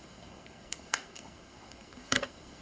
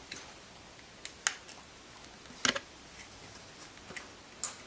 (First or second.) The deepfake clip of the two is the first